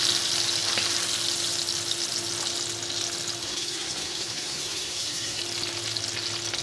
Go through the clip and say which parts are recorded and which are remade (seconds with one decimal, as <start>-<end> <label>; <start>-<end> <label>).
0.0-3.4 recorded; 3.4-5.4 remade; 5.4-6.6 recorded

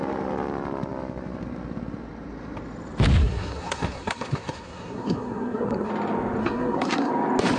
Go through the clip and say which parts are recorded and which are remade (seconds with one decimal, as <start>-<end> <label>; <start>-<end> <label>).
0.0-3.2 recorded; 3.2-5.9 remade; 5.9-6.4 recorded; 6.4-7.1 remade; 7.1-7.6 recorded